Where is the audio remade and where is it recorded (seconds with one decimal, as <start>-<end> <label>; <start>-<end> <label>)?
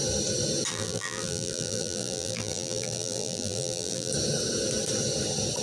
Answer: 0.0-0.7 recorded; 0.7-4.1 remade; 4.1-5.6 recorded